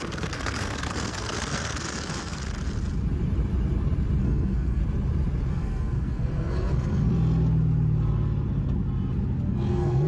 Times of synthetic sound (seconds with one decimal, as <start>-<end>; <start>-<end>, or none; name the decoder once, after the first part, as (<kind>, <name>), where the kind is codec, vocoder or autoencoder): 0.0-2.4 (codec, SNAC); 4.2-4.8; 5.5-7.1; 9.5-10.1